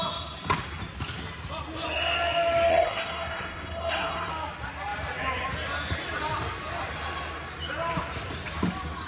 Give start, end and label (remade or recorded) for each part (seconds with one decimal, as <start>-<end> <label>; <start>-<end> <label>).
0.0-2.7 recorded; 2.7-4.3 remade; 4.3-9.1 recorded